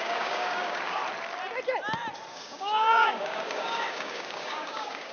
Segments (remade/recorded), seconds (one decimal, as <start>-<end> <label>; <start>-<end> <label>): 0.0-1.0 remade; 1.0-2.3 recorded; 2.3-5.1 remade